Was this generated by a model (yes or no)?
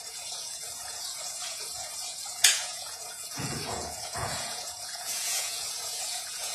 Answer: yes